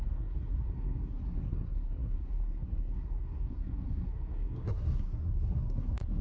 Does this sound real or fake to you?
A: fake